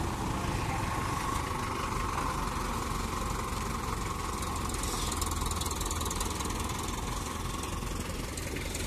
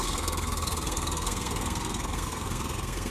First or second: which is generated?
second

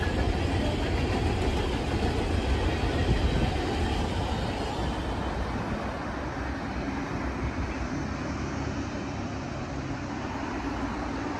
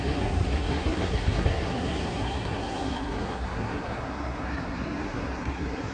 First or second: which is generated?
second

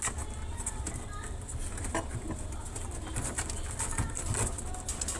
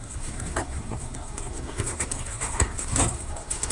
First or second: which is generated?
second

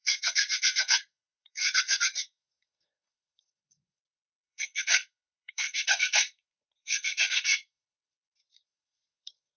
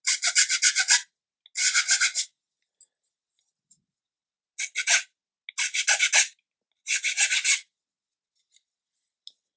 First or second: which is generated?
first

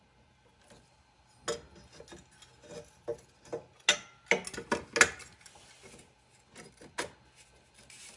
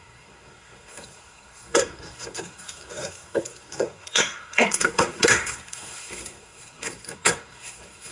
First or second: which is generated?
second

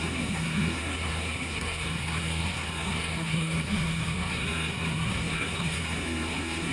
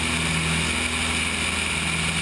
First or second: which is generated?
first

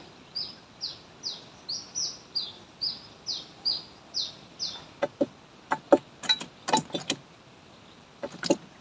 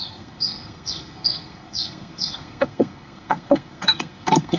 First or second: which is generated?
second